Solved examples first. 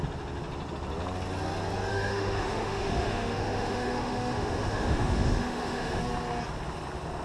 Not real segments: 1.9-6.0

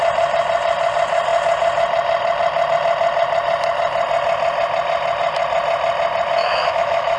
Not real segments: 6.4-7.2

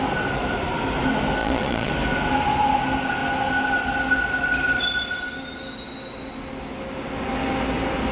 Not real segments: 1.4-1.9